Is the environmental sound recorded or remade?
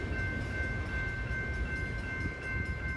recorded